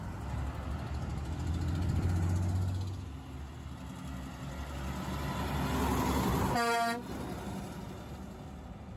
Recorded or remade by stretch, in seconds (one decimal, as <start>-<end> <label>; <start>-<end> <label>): 0.0-9.0 recorded